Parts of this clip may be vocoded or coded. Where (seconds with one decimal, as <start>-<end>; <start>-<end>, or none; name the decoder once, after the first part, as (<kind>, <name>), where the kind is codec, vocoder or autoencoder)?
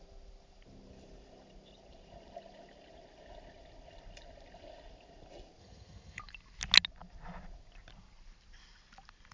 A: 5.6-6.2 (vocoder, HiFi-GAN)